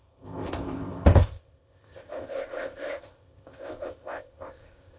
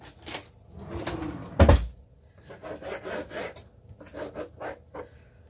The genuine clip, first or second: second